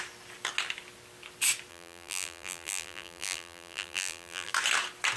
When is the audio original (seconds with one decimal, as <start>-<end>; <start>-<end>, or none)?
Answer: 0.0-1.7; 4.5-5.2